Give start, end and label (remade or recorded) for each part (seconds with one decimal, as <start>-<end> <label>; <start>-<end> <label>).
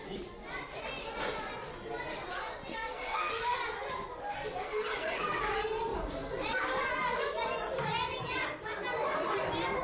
0.0-2.7 recorded; 2.7-3.3 remade; 3.3-4.6 recorded; 4.6-5.5 remade; 5.5-9.8 recorded